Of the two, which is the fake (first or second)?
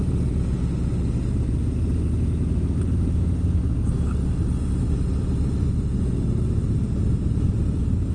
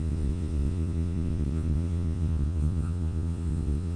second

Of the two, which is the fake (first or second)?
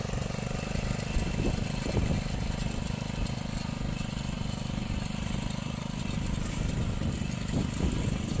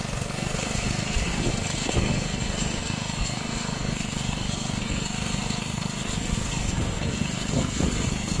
second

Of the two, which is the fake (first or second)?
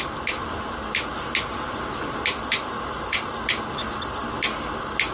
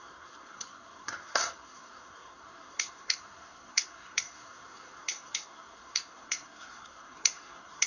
second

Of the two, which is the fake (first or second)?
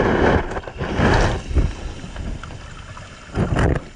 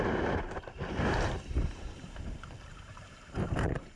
second